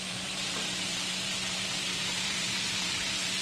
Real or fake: fake